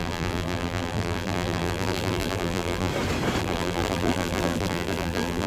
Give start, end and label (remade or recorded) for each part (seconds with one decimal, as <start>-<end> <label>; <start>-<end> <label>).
0.0-2.9 remade; 2.9-3.4 recorded; 3.4-5.5 remade